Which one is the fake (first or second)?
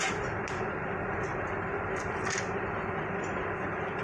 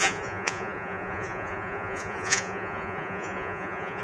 second